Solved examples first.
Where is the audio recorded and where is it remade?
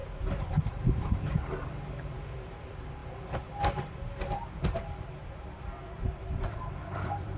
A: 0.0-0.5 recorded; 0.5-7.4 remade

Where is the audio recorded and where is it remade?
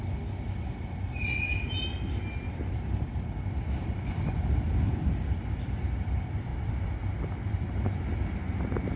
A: 0.0-6.5 recorded; 6.5-8.0 remade; 8.0-9.0 recorded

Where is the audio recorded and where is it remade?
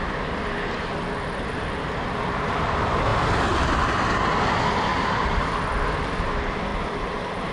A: 0.0-4.9 recorded; 4.9-5.4 remade; 5.4-6.7 recorded; 6.7-7.5 remade